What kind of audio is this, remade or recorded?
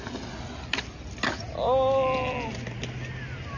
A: recorded